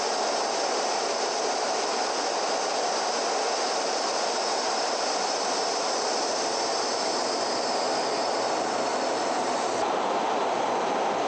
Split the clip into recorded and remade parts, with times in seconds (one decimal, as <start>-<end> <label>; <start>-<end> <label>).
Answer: 0.0-11.3 recorded